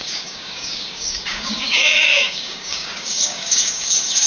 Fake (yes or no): yes